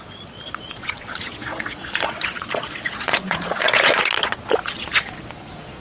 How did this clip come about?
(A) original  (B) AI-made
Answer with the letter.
B